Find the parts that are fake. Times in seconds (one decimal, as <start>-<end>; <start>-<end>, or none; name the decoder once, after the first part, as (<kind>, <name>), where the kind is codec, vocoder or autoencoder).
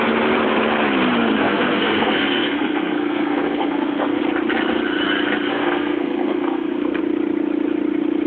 1.4-4.2 (codec, SNAC); 5.5-7.0